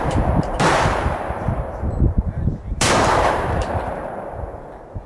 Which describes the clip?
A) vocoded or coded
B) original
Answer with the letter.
A